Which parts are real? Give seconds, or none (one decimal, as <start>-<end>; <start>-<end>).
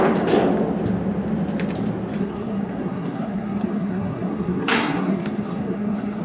0.0-2.2